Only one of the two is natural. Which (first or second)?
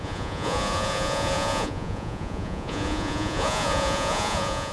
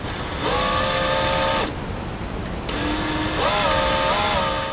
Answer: second